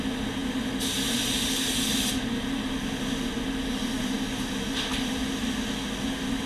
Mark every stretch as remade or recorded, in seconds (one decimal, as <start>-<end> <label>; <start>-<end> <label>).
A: 0.0-6.5 recorded

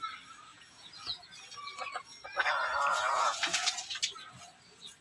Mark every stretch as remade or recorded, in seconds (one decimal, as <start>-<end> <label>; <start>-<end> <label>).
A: 0.0-0.5 recorded; 0.5-1.3 remade; 1.3-2.9 recorded; 2.9-3.7 remade; 3.7-5.0 recorded

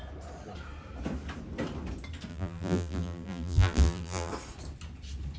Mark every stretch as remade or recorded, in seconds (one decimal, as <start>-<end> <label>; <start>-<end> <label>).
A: 0.0-2.3 recorded; 2.3-4.3 remade; 4.3-5.4 recorded

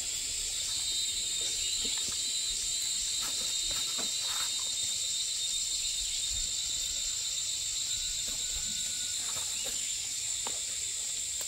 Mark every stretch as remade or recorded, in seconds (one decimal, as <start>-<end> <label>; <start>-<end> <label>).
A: 0.0-9.7 recorded; 9.7-10.2 remade; 10.2-11.5 recorded

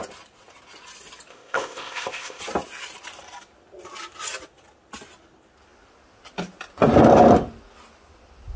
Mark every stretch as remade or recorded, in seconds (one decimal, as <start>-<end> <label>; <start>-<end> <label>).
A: 0.0-1.3 recorded; 1.3-2.4 remade; 2.4-8.6 recorded

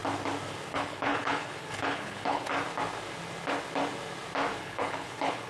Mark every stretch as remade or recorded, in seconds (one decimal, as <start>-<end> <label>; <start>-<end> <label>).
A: 0.0-0.7 recorded; 0.7-2.5 remade; 2.5-4.6 recorded; 4.6-5.5 remade

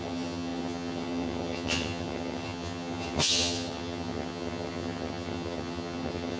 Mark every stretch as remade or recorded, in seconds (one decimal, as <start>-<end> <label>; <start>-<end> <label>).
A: 0.0-6.4 remade